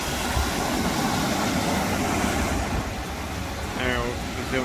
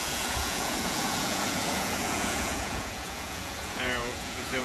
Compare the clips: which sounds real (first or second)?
first